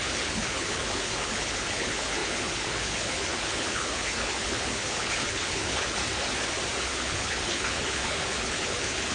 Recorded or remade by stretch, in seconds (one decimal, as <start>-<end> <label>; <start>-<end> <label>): 0.0-6.0 remade; 6.0-6.8 recorded; 6.8-9.1 remade